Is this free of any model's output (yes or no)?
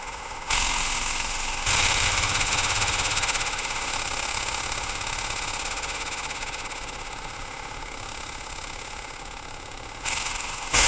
no